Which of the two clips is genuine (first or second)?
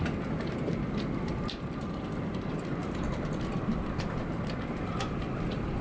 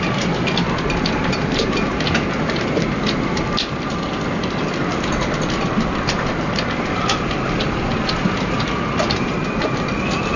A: second